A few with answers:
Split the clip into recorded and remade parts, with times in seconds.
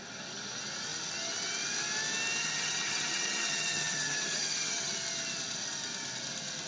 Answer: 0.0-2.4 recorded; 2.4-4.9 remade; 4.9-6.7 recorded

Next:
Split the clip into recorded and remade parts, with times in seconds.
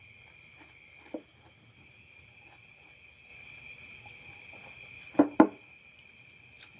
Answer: 0.0-6.8 recorded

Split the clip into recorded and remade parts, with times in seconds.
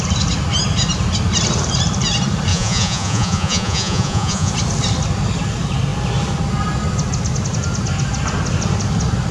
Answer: 0.0-2.5 recorded; 2.5-4.5 remade; 4.5-9.3 recorded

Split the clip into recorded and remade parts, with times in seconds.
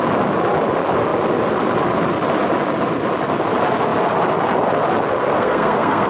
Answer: 0.0-5.3 recorded; 5.3-6.1 remade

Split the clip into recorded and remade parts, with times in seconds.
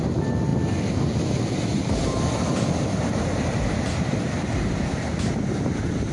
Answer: 0.0-6.1 recorded